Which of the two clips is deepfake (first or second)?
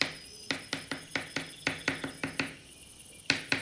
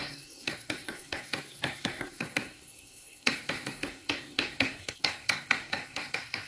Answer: second